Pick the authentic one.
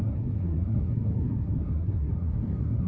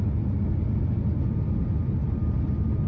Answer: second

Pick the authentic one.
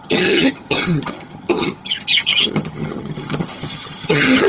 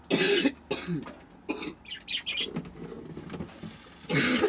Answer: second